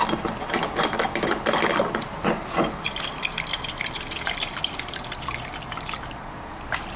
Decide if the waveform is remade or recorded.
recorded